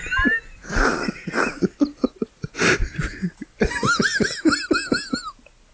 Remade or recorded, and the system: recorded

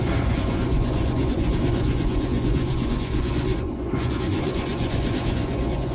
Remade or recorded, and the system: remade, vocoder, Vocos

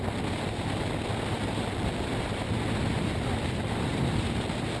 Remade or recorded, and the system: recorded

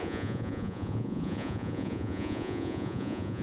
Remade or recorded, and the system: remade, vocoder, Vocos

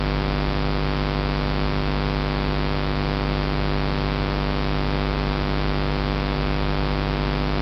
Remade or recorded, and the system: recorded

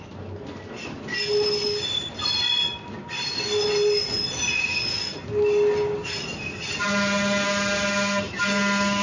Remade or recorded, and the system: recorded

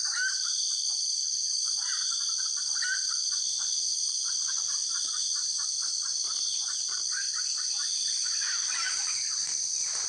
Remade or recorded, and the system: recorded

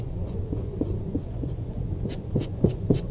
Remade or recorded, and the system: remade, vocoder, Vocos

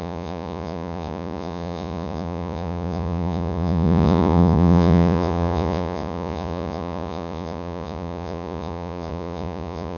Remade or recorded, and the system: remade, vocoder, Vocos